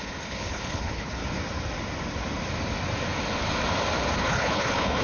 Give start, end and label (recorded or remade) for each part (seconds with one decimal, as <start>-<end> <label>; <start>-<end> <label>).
0.0-1.2 remade; 1.2-4.2 recorded; 4.2-5.0 remade